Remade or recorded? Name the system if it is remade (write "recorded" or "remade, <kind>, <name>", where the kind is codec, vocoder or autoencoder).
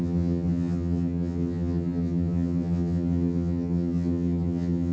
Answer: remade, vocoder, HiFi-GAN